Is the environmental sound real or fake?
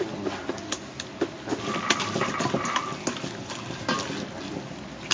real